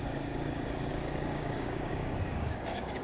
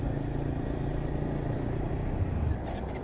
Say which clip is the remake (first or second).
first